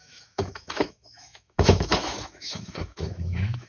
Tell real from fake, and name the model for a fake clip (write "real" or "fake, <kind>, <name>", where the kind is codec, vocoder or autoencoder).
fake, autoencoder, DAC-VAE